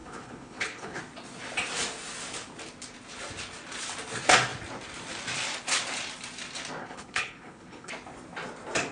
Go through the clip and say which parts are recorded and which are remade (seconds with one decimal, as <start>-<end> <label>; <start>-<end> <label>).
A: 0.0-1.0 remade; 1.0-6.8 recorded; 6.8-7.9 remade; 7.9-8.9 recorded